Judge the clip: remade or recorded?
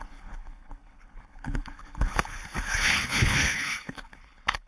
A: remade